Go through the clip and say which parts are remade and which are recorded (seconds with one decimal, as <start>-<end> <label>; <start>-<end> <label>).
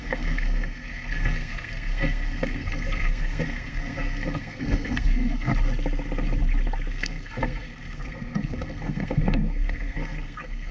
0.0-5.5 remade; 5.5-6.9 recorded; 6.9-10.7 remade